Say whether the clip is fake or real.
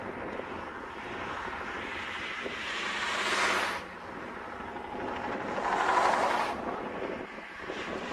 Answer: real